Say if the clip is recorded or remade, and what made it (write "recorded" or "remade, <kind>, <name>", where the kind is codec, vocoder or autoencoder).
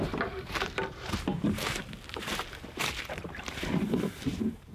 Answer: remade, vocoder, BigVGAN v2